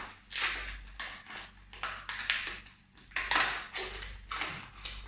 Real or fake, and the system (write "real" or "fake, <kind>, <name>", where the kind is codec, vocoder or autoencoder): real